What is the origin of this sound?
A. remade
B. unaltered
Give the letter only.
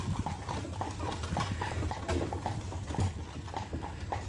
B